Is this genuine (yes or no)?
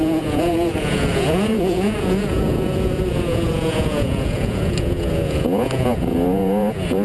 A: no